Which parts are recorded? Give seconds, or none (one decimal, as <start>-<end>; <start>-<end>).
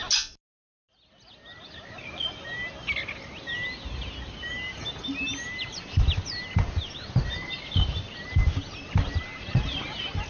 0.0-10.3